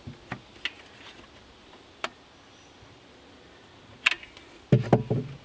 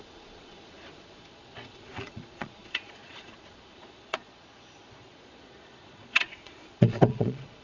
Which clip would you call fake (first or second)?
second